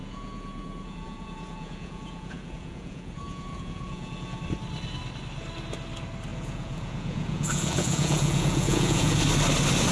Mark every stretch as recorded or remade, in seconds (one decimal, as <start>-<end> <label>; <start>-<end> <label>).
0.0-4.4 remade; 4.4-6.3 recorded; 6.3-9.2 remade; 9.2-9.9 recorded